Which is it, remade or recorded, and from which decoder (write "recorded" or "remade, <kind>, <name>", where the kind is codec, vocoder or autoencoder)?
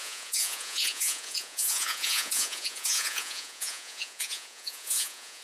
remade, vocoder, Vocos